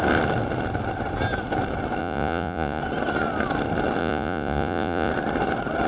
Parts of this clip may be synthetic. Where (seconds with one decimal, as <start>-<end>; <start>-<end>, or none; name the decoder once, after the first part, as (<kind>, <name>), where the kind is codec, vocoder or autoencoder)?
2.0-2.8 (vocoder, Vocos); 4.0-5.1